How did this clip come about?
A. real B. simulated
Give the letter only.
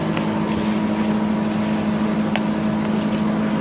A